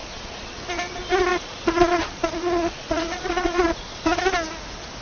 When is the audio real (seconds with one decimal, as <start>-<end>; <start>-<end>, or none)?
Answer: 0.6-1.3; 4.2-5.0